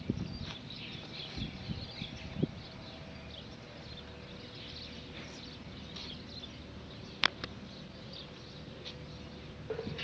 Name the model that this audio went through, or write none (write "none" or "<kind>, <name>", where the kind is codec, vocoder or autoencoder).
none